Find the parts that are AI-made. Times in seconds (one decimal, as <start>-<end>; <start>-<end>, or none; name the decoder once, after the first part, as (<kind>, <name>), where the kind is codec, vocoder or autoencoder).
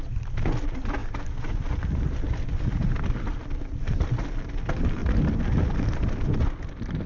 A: none